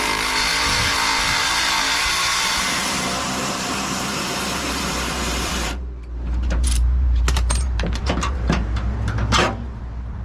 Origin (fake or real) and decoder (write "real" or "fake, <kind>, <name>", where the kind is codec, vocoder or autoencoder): fake, vocoder, BigVGAN v2